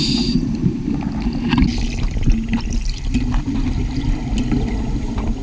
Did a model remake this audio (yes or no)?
no